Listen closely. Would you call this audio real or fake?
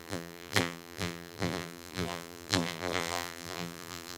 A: fake